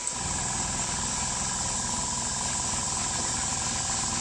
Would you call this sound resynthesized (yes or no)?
no